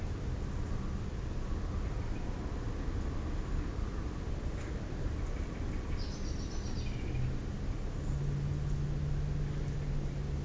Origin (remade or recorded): recorded